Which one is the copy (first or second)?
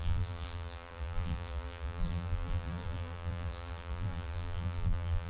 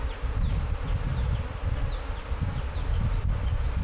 first